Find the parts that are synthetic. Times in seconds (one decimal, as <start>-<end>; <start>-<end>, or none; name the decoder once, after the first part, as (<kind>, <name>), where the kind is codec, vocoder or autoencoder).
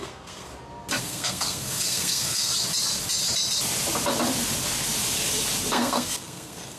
0.0-0.5 (codec, SNAC); 1.0-2.5; 5.7-6.8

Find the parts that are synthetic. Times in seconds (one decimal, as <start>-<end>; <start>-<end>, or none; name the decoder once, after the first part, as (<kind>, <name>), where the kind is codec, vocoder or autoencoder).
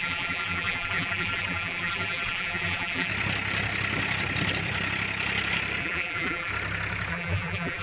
0.0-3.1 (vocoder, BigVGAN v2); 5.8-6.5; 7.1-7.8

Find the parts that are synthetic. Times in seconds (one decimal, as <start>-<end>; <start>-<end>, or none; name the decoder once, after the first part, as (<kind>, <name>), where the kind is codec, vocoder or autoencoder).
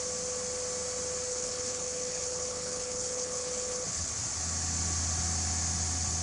1.3-4.1 (codec, HILCodec)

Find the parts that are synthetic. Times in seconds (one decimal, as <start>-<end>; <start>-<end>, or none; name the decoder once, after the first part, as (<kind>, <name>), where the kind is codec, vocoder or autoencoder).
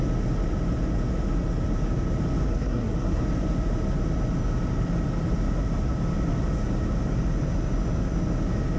2.5-3.2 (codec, SNAC)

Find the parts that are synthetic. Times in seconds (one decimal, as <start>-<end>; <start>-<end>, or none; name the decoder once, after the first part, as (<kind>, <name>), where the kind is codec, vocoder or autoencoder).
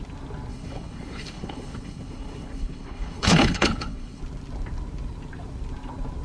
0.5-4.2 (codec, HILCodec)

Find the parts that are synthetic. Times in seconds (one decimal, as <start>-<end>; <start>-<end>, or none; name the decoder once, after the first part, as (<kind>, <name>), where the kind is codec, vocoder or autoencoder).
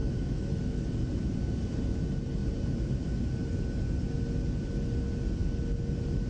0.0-0.8 (autoencoder, DAC-VAE)